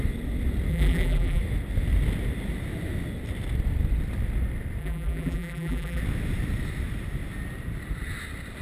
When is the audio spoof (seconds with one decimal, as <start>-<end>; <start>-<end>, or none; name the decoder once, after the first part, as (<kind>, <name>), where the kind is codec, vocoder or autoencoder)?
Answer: 0.7-1.4 (vocoder, BigVGAN v2); 4.8-6.0